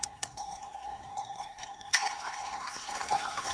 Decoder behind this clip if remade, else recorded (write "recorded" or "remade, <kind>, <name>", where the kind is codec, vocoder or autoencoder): remade, codec, SNAC